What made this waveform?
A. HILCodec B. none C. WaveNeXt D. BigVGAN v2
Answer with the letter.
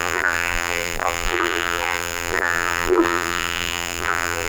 D